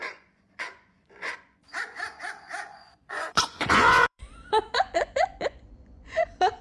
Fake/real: fake